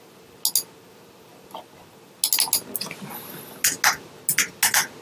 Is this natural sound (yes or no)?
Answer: yes